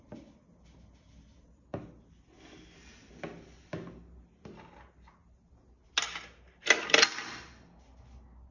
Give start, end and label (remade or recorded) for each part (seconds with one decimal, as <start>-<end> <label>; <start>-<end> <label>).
0.0-8.5 recorded